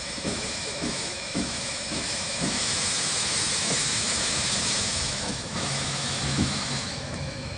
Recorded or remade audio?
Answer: remade